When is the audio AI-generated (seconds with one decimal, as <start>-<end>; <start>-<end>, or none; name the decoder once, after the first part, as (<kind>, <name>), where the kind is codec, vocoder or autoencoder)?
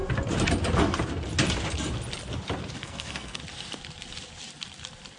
2.8-3.4 (codec, SNAC)